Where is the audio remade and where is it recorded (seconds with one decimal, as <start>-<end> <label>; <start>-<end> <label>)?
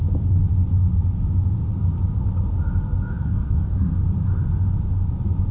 0.0-3.2 recorded; 3.2-3.8 remade; 3.8-5.5 recorded